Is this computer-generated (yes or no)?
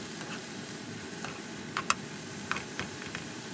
no